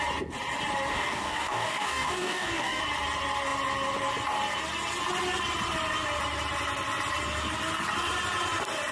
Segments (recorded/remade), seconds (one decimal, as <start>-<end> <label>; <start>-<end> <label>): 0.0-0.9 recorded; 0.9-2.8 remade; 2.8-8.9 recorded